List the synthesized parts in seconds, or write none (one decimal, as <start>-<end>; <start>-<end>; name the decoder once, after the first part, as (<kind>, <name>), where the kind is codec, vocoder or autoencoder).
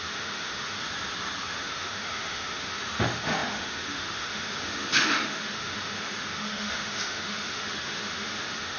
0.0-0.8 (autoencoder, DAC-VAE); 1.4-8.8